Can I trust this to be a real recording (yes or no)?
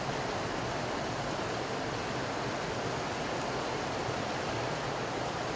yes